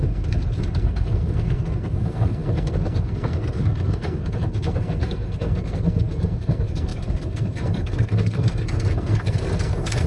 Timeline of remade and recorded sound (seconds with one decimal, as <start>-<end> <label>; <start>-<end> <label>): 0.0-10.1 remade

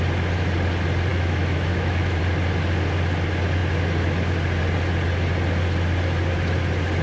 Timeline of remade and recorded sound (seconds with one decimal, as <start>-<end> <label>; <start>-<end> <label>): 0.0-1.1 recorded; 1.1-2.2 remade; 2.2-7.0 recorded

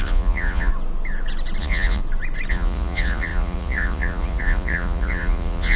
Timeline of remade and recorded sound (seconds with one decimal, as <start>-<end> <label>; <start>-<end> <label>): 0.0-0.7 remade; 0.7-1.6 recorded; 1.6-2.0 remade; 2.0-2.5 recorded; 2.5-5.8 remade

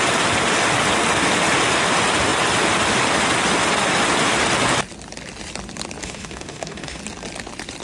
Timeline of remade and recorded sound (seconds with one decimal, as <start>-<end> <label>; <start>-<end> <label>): 0.0-6.0 recorded; 6.0-7.0 remade; 7.0-7.8 recorded